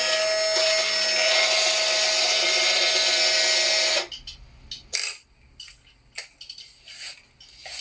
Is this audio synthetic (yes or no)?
no